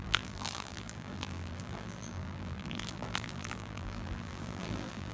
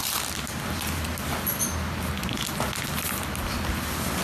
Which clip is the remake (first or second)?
first